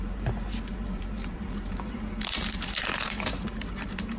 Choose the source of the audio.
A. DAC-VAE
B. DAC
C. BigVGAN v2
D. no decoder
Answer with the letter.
C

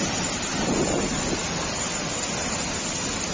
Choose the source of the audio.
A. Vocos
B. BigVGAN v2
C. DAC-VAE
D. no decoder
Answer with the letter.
B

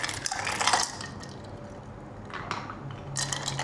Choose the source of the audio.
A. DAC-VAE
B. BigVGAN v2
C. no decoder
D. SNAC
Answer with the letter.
C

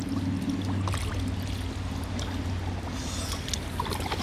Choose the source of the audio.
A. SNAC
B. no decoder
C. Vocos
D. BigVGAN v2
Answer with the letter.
B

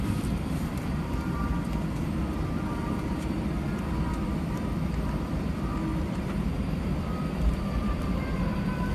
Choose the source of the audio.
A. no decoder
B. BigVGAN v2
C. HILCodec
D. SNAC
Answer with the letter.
B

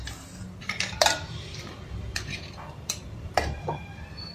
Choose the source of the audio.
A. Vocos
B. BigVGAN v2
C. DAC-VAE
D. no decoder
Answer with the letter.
B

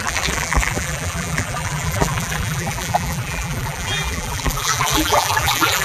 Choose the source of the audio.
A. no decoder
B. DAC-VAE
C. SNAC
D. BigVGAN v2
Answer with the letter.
D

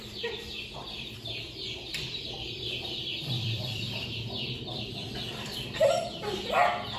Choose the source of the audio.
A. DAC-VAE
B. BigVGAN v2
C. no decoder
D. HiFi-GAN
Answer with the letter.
B